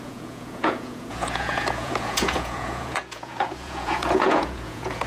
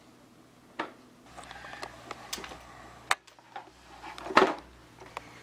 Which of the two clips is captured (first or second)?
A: second